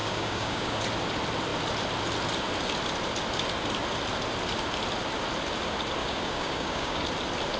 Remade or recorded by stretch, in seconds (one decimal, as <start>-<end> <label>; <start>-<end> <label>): 0.0-0.8 remade; 0.8-6.0 recorded; 6.0-7.0 remade; 7.0-7.6 recorded